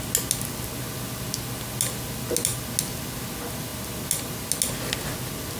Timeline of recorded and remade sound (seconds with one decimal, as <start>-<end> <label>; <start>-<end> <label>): 0.0-5.6 recorded